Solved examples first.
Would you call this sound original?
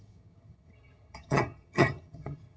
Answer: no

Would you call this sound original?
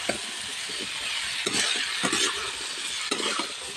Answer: yes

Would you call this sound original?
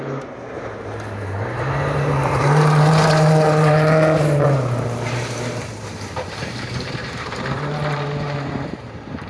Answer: no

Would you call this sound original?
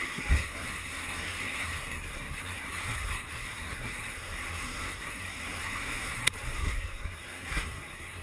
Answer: no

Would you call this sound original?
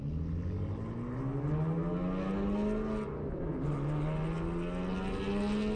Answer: yes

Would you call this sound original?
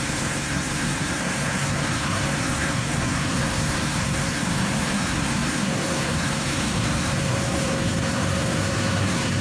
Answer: no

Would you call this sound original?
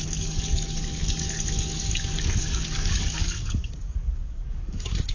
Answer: no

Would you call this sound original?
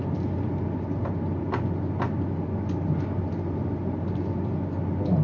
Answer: yes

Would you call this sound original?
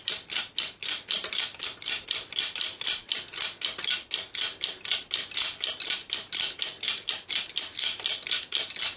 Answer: yes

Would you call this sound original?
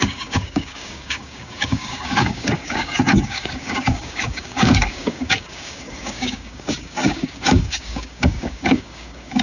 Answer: no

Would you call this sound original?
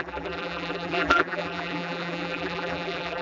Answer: no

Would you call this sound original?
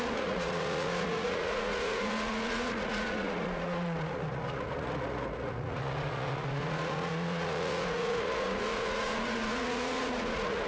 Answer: no